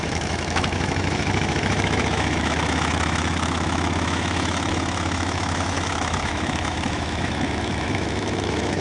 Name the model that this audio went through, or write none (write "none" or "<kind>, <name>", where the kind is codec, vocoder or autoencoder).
autoencoder, DAC-VAE